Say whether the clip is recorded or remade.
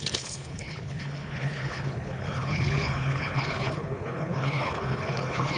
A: remade